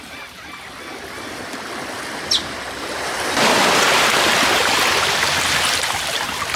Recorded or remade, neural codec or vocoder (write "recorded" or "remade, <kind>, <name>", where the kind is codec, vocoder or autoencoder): recorded